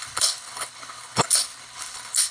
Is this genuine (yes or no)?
no